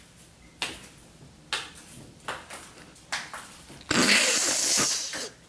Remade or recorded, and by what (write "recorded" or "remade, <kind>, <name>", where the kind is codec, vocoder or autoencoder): recorded